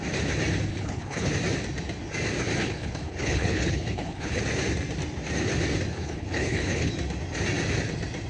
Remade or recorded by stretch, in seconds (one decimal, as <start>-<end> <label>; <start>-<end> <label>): 0.0-0.7 recorded; 0.7-1.3 remade; 1.3-2.6 recorded; 2.6-4.4 remade; 4.4-5.9 recorded; 5.9-6.9 remade; 6.9-8.3 recorded